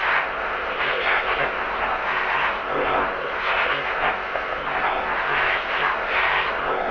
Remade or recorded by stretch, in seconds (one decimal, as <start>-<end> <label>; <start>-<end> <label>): 0.0-6.9 remade